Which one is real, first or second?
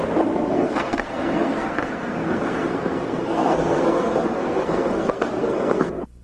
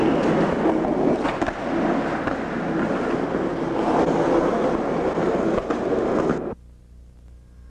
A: second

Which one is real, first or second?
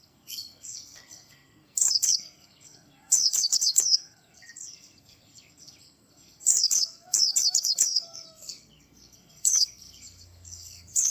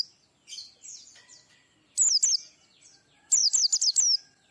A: second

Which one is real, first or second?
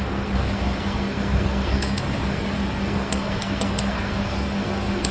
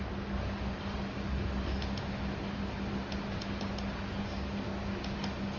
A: second